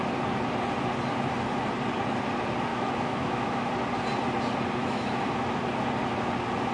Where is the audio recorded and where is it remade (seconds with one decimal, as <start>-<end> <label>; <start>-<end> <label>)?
0.0-2.7 recorded; 2.7-3.7 remade; 3.7-4.8 recorded; 4.8-5.3 remade; 5.3-6.7 recorded